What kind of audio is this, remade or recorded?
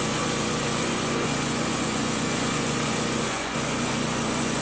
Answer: remade